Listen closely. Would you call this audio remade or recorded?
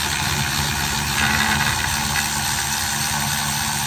recorded